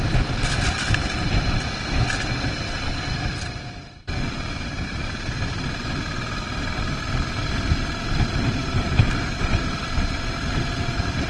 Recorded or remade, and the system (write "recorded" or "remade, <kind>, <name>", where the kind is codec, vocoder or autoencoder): remade, vocoder, BigVGAN v2